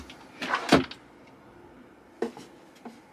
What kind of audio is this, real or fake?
real